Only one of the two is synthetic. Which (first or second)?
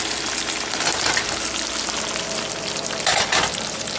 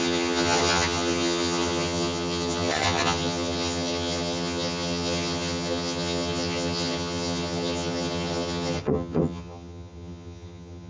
second